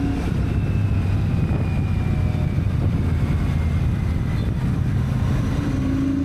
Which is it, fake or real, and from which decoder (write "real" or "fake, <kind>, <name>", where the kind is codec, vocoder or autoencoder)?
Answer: real